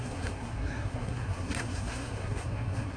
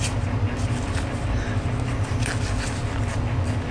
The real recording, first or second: second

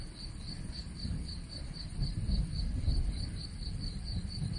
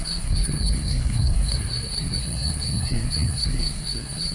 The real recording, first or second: first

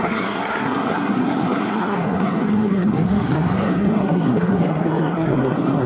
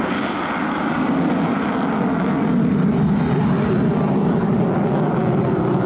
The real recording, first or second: second